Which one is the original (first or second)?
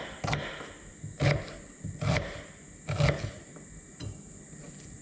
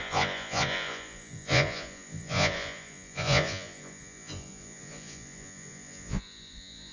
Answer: first